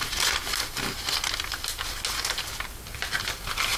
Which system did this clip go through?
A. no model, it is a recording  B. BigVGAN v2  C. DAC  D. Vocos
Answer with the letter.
A